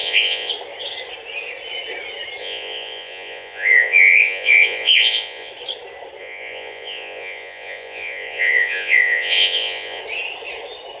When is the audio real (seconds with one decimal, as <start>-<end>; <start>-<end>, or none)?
0.5-2.4; 5.5-6.2; 10.0-11.0